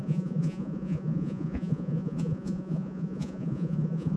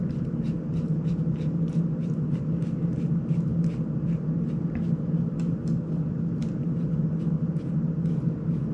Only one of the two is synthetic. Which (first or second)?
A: first